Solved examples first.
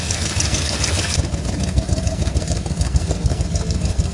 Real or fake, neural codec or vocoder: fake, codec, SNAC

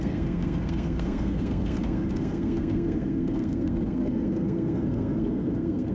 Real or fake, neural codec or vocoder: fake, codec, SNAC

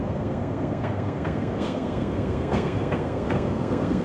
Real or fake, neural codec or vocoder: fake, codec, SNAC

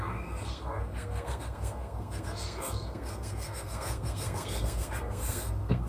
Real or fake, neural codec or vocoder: fake, codec, SNAC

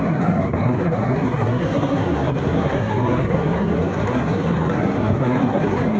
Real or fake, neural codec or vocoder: fake, codec, SNAC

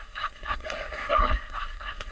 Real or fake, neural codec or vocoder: fake, codec, SNAC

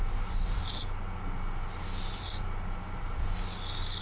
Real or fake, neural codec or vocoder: real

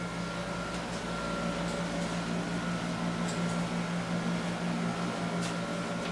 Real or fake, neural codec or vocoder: real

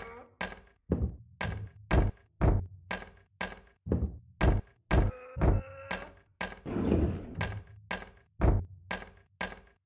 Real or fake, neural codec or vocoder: real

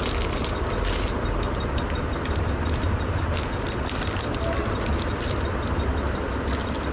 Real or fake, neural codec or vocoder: real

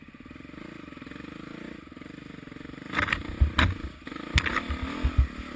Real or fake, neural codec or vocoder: real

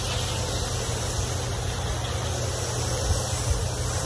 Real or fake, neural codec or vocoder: real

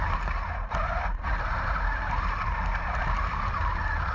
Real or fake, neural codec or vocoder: real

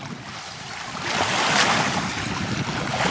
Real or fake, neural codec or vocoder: real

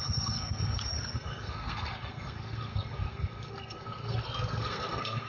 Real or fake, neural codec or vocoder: fake, codec, SNAC